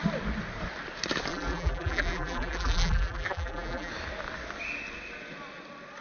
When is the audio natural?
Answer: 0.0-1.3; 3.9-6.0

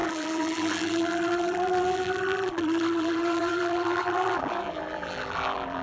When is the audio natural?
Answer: none

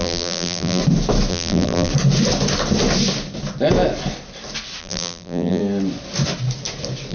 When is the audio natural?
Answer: 0.8-1.3; 1.9-4.8; 5.6-7.1

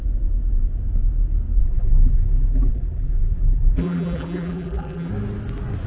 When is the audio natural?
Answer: 0.0-1.6; 5.1-5.9

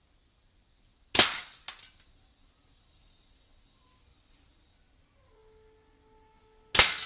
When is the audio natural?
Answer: 0.9-2.4; 5.4-7.1

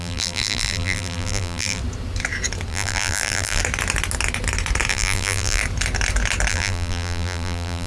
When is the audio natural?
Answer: 1.8-2.7; 3.6-4.9; 5.6-6.5